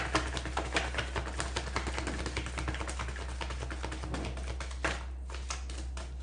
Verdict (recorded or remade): recorded